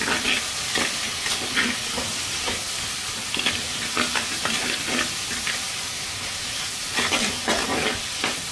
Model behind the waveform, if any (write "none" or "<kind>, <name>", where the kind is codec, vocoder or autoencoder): none